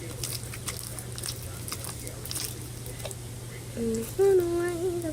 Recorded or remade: recorded